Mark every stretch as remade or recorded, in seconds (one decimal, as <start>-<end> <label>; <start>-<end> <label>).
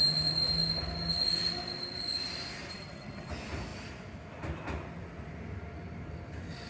0.0-2.7 recorded; 2.7-3.3 remade; 3.3-6.7 recorded